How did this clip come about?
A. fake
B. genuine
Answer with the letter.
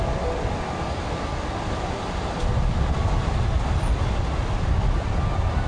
B